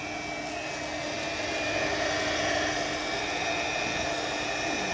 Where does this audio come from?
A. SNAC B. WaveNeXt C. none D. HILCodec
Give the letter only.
C